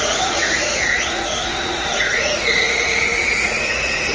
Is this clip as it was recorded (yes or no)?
no